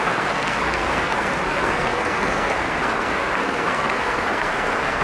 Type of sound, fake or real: fake